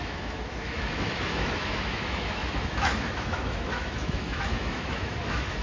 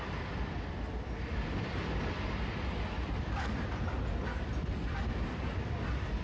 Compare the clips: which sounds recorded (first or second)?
second